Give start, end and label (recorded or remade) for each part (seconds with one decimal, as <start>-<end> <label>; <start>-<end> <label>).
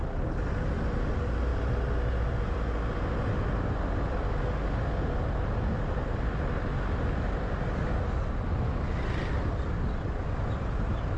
0.0-11.2 recorded